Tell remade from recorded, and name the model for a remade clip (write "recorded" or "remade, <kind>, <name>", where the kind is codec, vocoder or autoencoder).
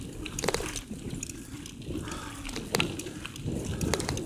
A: recorded